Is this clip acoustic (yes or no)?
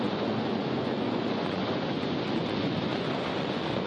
no